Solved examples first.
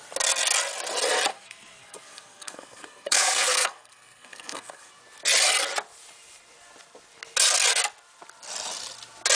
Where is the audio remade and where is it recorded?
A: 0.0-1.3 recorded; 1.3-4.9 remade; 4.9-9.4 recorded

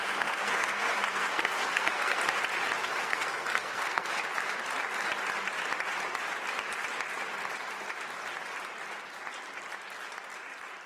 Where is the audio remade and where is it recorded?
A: 0.0-2.2 remade; 2.2-2.8 recorded; 2.8-4.2 remade; 4.2-10.9 recorded

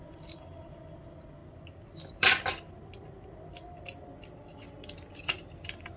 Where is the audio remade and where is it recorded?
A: 0.0-6.0 recorded

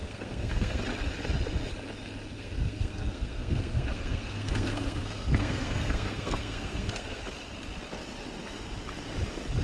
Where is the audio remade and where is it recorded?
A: 0.0-0.8 remade; 0.8-2.3 recorded; 2.3-7.2 remade; 7.2-9.6 recorded

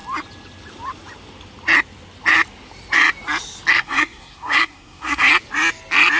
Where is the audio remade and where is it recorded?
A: 0.0-3.7 recorded; 3.7-5.3 remade; 5.3-6.2 recorded

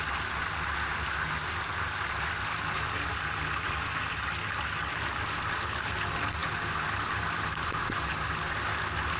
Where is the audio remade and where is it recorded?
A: 0.0-9.2 recorded

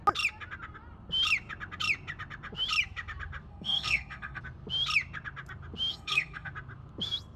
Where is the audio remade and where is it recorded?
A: 0.0-3.5 recorded; 3.5-4.4 remade; 4.4-5.9 recorded; 5.9-6.5 remade; 6.5-7.4 recorded

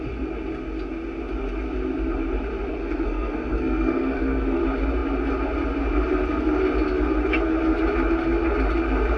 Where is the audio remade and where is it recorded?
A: 0.0-2.7 recorded; 2.7-4.6 remade; 4.6-9.2 recorded